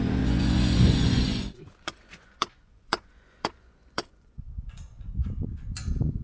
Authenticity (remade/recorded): remade